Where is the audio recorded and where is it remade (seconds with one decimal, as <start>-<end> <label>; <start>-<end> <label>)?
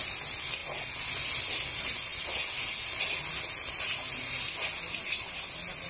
0.0-5.9 recorded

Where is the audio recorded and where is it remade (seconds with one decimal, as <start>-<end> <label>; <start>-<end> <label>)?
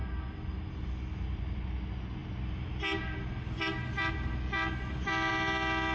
0.0-5.9 recorded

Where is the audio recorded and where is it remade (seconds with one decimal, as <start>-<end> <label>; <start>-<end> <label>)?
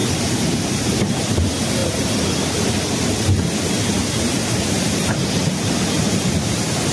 0.0-6.9 recorded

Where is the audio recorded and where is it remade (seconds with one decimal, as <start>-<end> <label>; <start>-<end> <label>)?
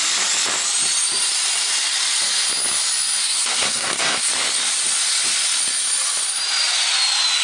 0.0-3.2 recorded; 3.2-4.3 remade; 4.3-7.4 recorded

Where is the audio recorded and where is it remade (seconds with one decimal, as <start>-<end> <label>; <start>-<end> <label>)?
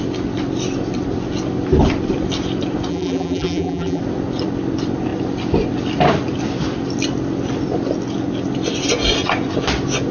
0.0-2.9 recorded; 2.9-4.0 remade; 4.0-10.1 recorded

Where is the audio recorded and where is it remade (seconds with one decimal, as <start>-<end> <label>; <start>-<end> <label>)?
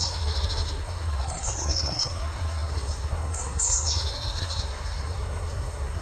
0.0-6.0 remade